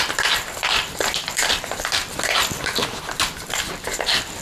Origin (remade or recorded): recorded